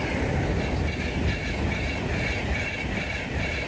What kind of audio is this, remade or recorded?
recorded